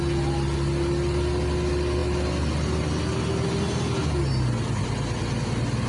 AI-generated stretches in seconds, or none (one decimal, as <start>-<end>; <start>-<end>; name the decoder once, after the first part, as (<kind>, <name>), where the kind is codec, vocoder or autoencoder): none